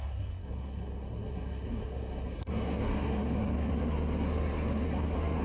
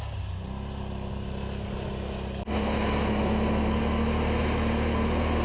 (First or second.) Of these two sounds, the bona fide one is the second